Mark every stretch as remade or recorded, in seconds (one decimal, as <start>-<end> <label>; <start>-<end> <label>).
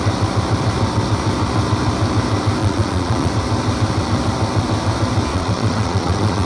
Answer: 0.0-2.6 recorded; 2.6-3.3 remade; 3.3-5.3 recorded; 5.3-6.5 remade